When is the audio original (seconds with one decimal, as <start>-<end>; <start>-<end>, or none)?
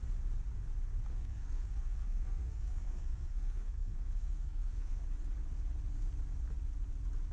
0.0-1.1; 5.0-7.3